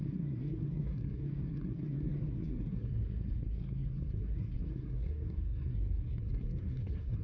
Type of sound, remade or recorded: remade